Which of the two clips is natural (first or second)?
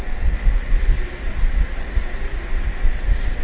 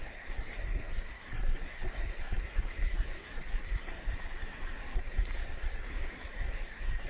first